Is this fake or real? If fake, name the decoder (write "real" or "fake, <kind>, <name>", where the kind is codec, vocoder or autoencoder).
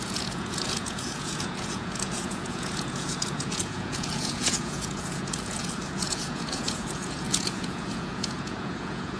fake, vocoder, Vocos